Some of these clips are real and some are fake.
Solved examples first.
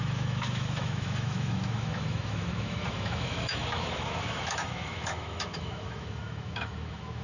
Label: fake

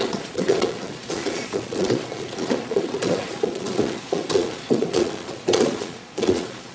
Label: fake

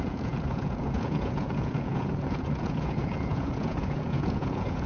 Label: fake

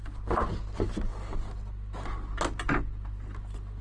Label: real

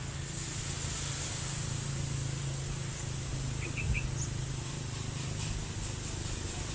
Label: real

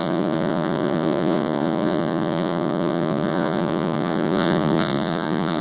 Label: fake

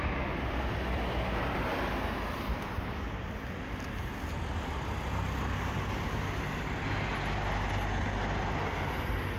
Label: real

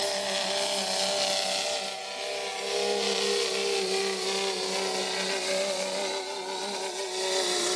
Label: real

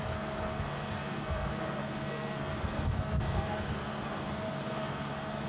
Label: fake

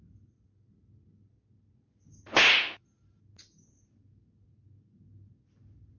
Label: real